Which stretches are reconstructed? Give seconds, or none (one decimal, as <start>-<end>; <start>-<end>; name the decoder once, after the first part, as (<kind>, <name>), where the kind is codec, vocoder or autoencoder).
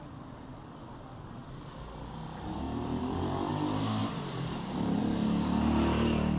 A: 4.0-5.0 (vocoder, BigVGAN v2)